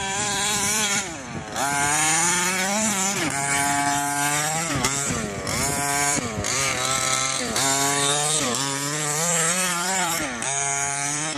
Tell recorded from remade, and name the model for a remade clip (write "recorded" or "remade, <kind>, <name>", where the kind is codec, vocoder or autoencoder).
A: remade, vocoder, BigVGAN v2